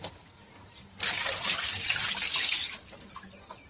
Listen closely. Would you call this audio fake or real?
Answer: fake